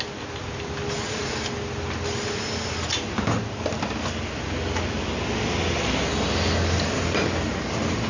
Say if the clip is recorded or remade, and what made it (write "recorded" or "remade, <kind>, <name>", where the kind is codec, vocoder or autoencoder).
recorded